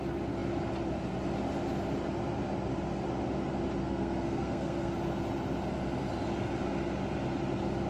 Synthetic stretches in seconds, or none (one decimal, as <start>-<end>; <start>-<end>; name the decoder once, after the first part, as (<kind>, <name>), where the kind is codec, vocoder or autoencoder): 3.8-4.9 (codec, SNAC)